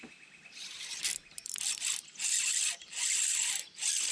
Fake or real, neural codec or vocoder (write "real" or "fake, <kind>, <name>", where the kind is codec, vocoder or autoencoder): fake, vocoder, BigVGAN v2